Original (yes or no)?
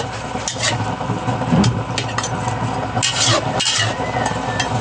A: yes